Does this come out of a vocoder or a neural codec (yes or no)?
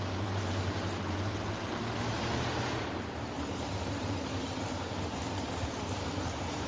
yes